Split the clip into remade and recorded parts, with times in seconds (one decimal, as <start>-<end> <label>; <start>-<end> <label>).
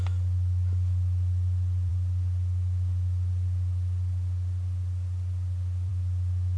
0.0-6.6 recorded